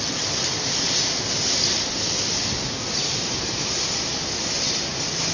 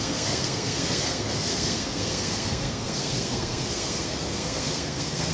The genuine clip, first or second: first